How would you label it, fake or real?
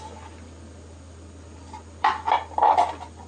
fake